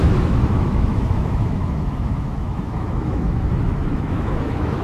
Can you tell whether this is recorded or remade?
remade